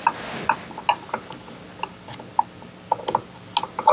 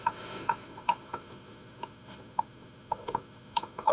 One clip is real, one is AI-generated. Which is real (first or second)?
first